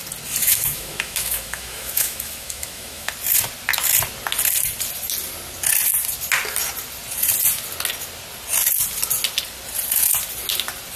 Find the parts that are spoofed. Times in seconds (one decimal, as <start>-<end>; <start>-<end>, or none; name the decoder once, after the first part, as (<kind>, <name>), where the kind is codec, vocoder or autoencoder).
0.4-3.1 (autoencoder, DAC-VAE)

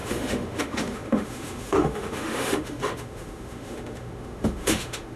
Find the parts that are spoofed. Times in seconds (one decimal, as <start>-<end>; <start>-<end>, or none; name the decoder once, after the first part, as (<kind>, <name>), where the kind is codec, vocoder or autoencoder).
0.0-5.2 (autoencoder, DAC-VAE)

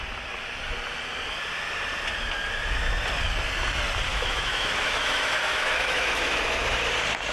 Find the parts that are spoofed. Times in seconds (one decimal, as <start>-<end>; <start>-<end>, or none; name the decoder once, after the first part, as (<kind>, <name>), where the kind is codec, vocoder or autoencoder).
4.1-6.4 (autoencoder, DAC-VAE)

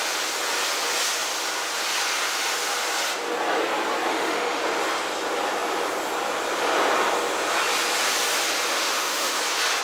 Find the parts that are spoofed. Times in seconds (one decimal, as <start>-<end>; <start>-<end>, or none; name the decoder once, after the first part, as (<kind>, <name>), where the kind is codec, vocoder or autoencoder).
4.1-4.6 (autoencoder, DAC-VAE); 8.7-9.4

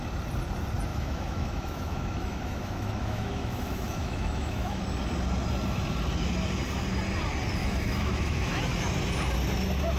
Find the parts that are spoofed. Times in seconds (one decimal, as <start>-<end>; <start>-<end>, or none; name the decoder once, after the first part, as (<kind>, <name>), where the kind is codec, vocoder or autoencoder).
0.9-4.8 (autoencoder, DAC-VAE); 7.6-8.6